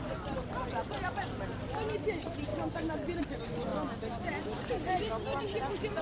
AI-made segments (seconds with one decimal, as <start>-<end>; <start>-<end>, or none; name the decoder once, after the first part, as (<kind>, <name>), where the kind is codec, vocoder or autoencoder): 0.0-6.0 (vocoder, BigVGAN v2)